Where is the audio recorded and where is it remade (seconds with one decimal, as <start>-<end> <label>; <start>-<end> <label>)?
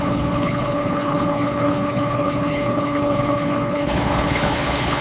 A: 0.0-5.0 remade